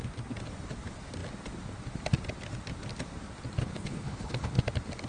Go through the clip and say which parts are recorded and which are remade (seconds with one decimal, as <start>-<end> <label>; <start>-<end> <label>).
0.0-3.6 recorded; 3.6-4.6 remade; 4.6-5.1 recorded

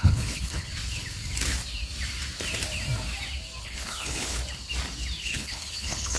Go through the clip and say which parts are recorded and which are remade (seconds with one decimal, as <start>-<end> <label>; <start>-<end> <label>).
0.0-0.7 remade; 0.7-3.6 recorded; 3.6-4.4 remade; 4.4-5.2 recorded; 5.2-6.2 remade

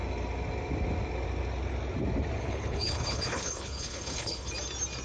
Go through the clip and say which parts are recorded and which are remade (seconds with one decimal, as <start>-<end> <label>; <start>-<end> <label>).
0.0-2.4 recorded; 2.4-4.5 remade; 4.5-5.0 recorded

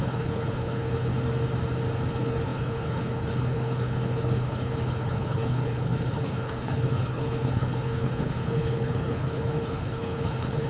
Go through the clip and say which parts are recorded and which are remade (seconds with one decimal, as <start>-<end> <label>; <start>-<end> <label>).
0.0-1.1 remade; 1.1-2.1 recorded; 2.1-10.7 remade

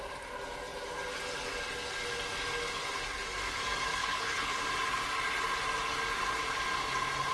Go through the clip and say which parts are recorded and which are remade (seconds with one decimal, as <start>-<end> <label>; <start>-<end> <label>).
0.0-4.0 recorded; 4.0-4.6 remade; 4.6-7.3 recorded

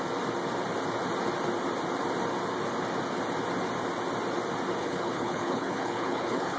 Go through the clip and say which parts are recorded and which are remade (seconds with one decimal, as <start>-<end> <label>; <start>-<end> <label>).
0.0-4.8 recorded; 4.8-6.6 remade

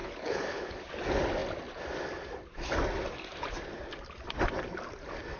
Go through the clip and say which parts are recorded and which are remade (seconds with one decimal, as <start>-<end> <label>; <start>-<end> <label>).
0.0-0.9 remade; 0.9-5.4 recorded

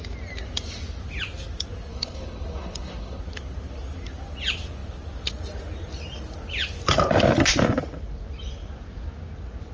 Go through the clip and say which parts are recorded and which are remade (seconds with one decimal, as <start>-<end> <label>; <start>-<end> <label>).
0.0-1.9 recorded; 1.9-3.2 remade; 3.2-9.7 recorded